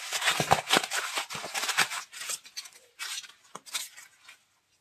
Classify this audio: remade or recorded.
recorded